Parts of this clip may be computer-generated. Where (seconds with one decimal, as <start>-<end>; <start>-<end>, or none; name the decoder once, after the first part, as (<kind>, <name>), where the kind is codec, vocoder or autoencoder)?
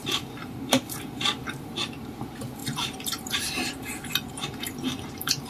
0.0-5.5 (vocoder, BigVGAN v2)